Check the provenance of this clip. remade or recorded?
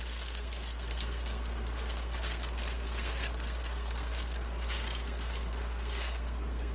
remade